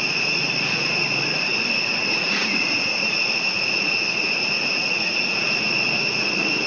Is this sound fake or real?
fake